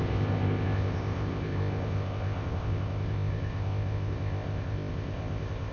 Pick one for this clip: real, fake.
fake